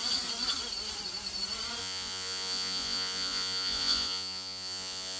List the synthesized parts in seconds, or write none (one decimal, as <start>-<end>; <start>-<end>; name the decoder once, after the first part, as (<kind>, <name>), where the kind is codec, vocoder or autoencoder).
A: 1.8-5.2 (vocoder, Vocos)